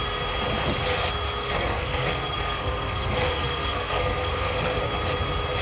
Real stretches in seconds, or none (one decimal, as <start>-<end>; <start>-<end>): 0.0-1.4; 4.8-5.6